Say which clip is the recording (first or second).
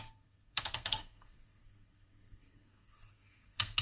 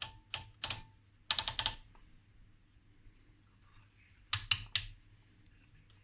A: second